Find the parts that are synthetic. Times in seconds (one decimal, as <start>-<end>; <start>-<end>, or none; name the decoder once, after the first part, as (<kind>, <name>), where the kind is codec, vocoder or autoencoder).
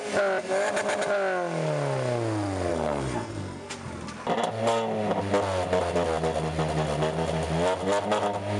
2.7-3.7 (codec, SNAC)